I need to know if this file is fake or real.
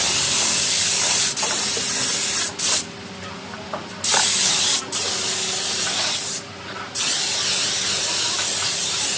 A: real